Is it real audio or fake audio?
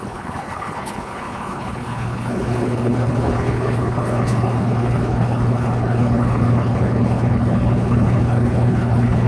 fake